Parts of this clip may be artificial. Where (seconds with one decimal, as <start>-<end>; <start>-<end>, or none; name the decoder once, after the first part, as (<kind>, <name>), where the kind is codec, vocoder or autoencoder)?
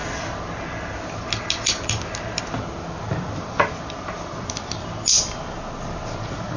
none